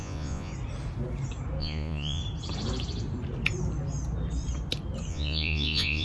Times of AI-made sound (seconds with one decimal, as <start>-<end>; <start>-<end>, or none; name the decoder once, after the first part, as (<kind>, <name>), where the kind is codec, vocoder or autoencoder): 0.0-0.5 (vocoder, Vocos); 1.6-2.2; 5.1-6.0